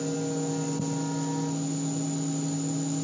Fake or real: real